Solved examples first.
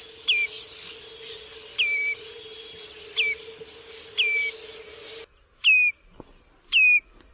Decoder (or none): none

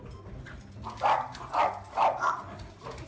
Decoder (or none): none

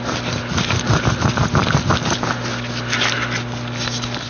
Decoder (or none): none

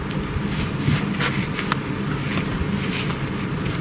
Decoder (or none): none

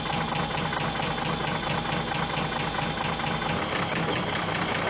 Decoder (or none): none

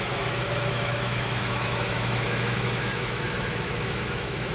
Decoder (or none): autoencoder, DAC-VAE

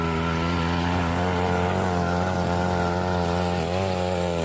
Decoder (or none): none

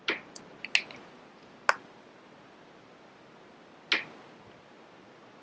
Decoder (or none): none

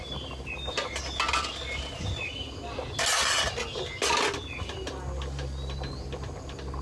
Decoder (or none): none